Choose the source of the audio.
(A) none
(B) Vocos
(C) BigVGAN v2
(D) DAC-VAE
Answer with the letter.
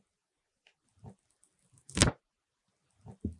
A